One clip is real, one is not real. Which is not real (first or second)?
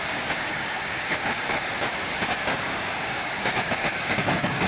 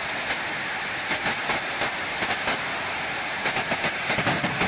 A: first